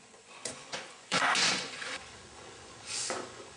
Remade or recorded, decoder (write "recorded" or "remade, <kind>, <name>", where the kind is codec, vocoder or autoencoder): remade, vocoder, Vocos